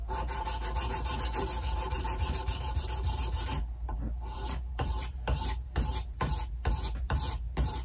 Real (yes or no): no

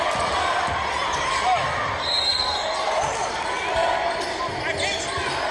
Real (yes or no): yes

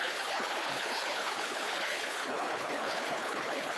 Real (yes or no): no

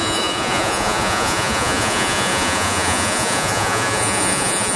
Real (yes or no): no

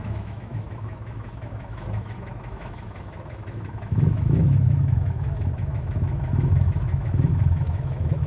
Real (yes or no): no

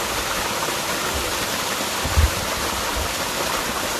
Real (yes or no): yes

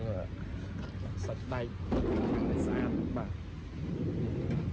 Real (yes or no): yes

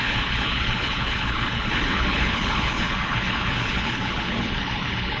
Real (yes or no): no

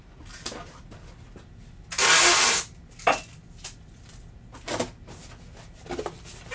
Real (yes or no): yes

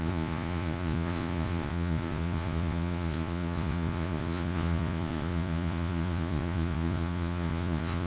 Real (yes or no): no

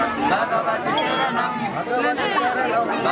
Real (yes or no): yes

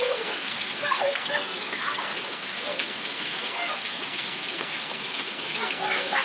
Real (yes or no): no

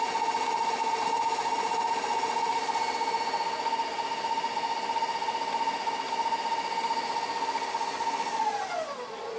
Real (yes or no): yes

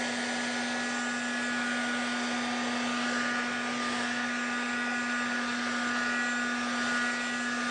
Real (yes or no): yes